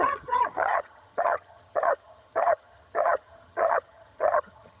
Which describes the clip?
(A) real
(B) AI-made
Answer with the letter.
B